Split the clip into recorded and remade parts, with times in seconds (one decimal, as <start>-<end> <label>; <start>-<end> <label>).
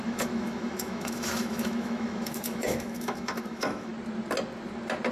0.0-3.9 remade; 3.9-5.1 recorded